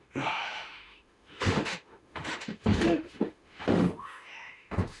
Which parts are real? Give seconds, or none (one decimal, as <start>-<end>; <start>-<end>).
none